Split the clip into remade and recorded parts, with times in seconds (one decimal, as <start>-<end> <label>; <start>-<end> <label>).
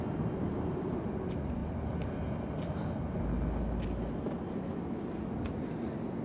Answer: 0.0-1.6 remade; 1.6-5.3 recorded; 5.3-6.2 remade